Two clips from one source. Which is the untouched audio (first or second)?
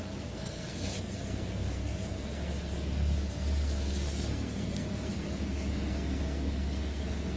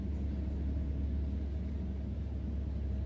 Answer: second